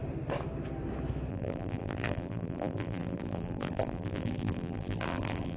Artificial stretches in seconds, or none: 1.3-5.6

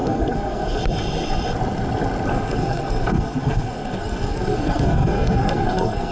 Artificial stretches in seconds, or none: 0.0-0.8; 2.3-6.1

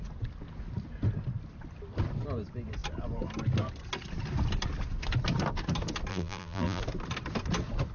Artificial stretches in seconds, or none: 6.1-6.8

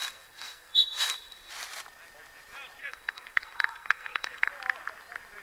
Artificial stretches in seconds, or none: 0.0-1.5; 2.8-4.5

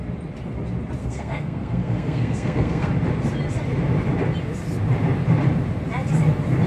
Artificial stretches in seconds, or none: 1.0-2.9

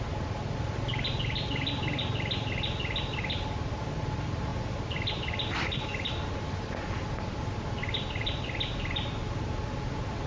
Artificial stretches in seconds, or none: none

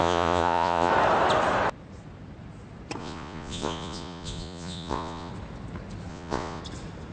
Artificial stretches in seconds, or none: 0.0-0.9; 3.0-5.3; 6.1-6.6

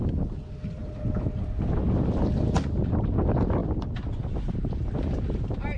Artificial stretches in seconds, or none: 0.8-1.6